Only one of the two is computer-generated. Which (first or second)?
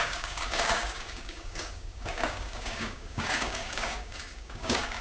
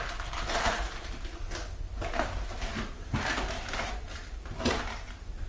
first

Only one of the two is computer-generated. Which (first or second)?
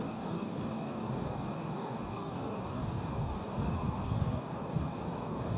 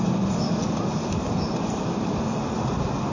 first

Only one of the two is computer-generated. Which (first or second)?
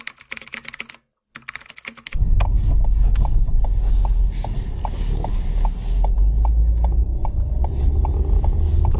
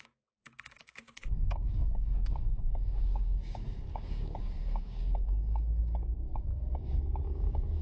second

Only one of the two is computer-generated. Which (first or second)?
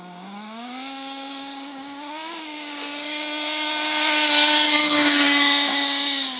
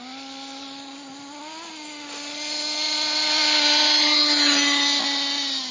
first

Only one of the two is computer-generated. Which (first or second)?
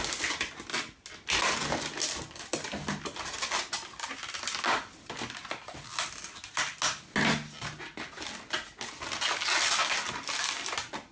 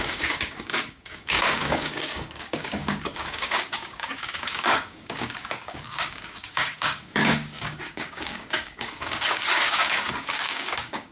second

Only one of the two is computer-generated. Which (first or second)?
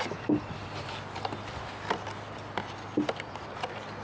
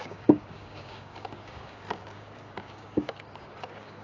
second